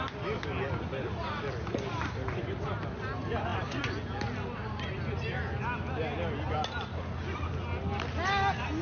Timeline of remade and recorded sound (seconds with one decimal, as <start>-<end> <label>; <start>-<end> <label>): 0.0-8.8 recorded